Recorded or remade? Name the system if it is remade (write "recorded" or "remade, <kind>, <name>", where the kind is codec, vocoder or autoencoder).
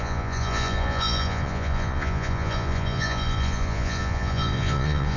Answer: remade, vocoder, Vocos